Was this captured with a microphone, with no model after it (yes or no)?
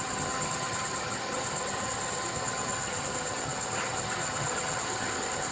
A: no